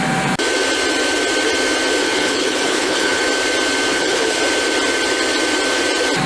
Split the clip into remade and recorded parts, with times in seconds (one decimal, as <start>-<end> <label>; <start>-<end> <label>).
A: 0.0-2.0 recorded; 2.0-3.2 remade; 3.2-3.9 recorded; 3.9-4.4 remade; 4.4-6.3 recorded